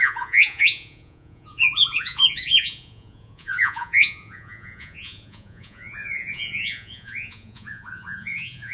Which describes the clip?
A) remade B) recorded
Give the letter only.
A